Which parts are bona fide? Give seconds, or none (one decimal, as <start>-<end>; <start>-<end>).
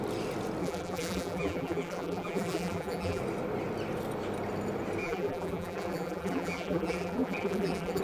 0.0-0.6; 3.2-5.0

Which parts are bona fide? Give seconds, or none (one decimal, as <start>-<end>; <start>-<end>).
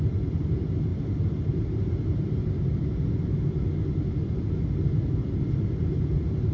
0.0-6.5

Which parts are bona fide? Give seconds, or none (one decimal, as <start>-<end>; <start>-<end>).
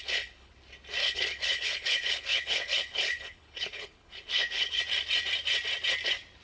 0.5-1.0; 4.8-6.4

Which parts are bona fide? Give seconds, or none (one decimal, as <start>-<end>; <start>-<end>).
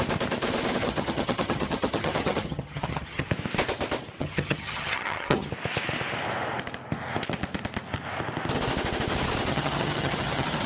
0.0-0.8; 3.3-4.2; 5.5-9.5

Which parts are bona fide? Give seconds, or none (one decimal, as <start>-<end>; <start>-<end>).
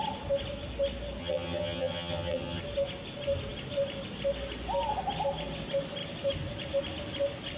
0.0-1.2; 2.6-7.6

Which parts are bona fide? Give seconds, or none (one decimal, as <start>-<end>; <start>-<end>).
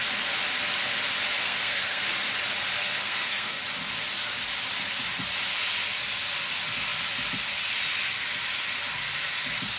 0.0-1.4; 2.0-2.8; 3.6-9.8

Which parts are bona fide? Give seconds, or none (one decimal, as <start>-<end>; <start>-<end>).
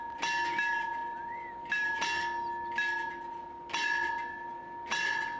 0.0-5.4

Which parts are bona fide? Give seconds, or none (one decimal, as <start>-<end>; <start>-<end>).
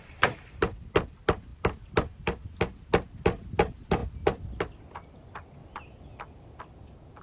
0.0-7.2